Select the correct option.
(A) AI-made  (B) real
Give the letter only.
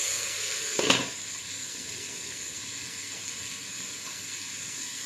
A